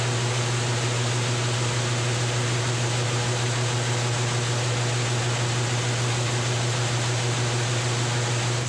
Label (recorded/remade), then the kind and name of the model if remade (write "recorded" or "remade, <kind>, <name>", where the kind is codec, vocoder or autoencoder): recorded